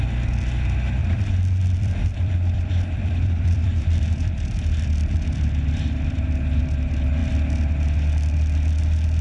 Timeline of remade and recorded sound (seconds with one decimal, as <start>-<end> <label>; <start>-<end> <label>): 0.0-1.0 recorded; 1.0-4.5 remade; 4.5-9.2 recorded